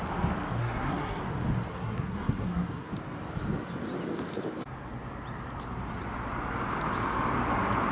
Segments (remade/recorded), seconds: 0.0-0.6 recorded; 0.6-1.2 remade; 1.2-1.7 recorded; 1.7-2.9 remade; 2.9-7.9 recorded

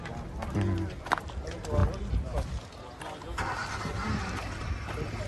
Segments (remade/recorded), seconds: 0.0-5.3 recorded

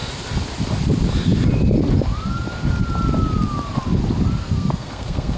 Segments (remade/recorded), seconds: 0.0-4.4 recorded; 4.4-5.4 remade

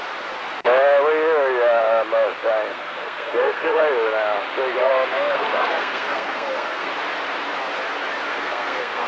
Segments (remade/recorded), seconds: 0.0-2.7 recorded; 2.7-3.8 remade; 3.8-4.8 recorded; 4.8-6.9 remade; 6.9-8.3 recorded; 8.3-9.1 remade

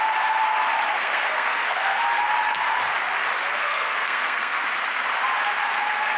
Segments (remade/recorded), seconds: 0.0-1.0 recorded; 1.0-2.0 remade; 2.0-3.6 recorded; 3.6-4.6 remade; 4.6-6.2 recorded

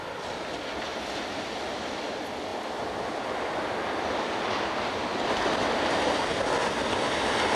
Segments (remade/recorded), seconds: 0.0-7.6 recorded